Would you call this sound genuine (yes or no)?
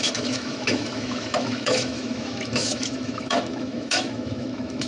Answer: no